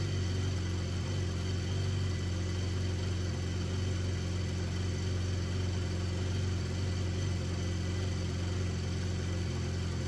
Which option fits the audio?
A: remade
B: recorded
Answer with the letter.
B